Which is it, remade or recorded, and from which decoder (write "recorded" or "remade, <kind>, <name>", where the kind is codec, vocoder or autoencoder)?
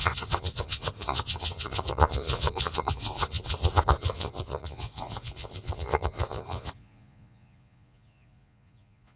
remade, vocoder, Vocos